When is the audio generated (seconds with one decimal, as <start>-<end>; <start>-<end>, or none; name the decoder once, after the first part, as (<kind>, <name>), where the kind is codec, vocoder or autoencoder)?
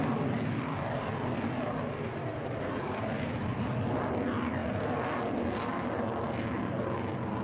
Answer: none